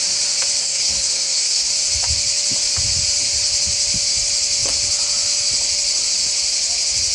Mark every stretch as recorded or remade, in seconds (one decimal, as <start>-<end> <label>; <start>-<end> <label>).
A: 0.0-0.6 recorded; 0.6-1.7 remade; 1.7-7.1 recorded

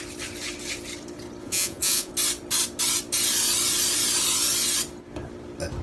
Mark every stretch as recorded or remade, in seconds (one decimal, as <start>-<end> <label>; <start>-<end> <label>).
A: 0.0-1.4 recorded; 1.4-2.1 remade; 2.1-5.8 recorded

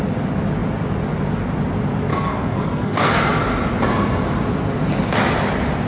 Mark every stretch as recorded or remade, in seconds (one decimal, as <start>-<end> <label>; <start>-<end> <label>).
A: 0.0-2.1 recorded; 2.1-3.2 remade; 3.2-5.9 recorded

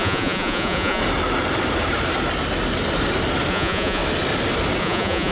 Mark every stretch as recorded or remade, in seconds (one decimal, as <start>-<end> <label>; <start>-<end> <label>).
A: 0.0-1.0 remade; 1.0-3.5 recorded; 3.5-4.0 remade; 4.0-4.8 recorded; 4.8-5.3 remade

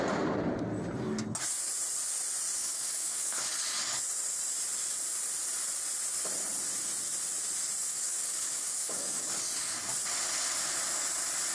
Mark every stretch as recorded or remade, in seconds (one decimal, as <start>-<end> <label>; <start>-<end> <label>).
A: 0.0-2.6 recorded; 2.6-3.4 remade; 3.4-7.9 recorded; 7.9-9.3 remade; 9.3-11.5 recorded

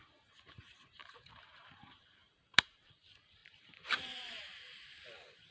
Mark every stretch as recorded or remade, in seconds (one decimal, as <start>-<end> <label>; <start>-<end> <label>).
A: 0.0-5.5 remade